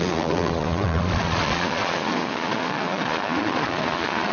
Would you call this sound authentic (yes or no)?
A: no